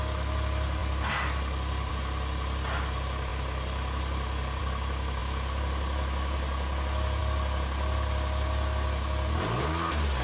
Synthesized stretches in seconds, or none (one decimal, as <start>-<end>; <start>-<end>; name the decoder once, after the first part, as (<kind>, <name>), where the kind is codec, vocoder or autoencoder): none